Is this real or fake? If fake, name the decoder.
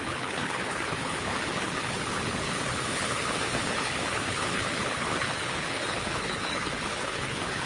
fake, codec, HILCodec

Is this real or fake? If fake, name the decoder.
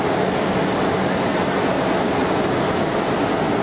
real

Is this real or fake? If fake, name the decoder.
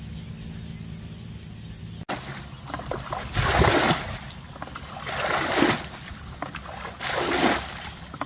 real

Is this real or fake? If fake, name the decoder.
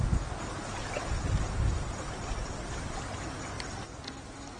real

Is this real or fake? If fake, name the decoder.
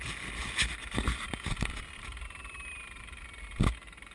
real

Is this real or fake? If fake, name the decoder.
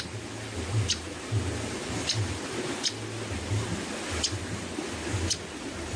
real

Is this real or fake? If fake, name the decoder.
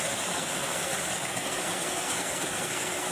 fake, codec, SNAC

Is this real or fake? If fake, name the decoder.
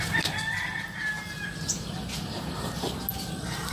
real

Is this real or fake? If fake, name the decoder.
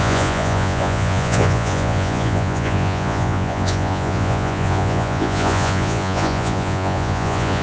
fake, vocoder, Vocos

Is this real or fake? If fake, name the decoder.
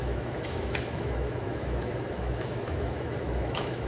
fake, autoencoder, DAC-VAE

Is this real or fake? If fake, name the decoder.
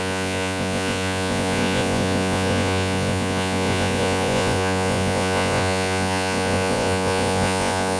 fake, vocoder, Vocos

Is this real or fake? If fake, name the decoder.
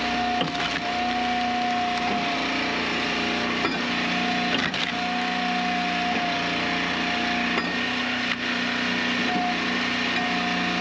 real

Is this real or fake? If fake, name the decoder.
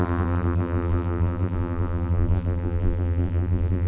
fake, vocoder, BigVGAN v2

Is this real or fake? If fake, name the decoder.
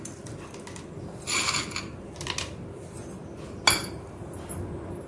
real